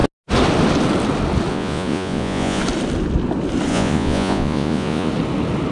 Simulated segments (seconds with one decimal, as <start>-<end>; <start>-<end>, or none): 1.5-2.6; 3.7-5.1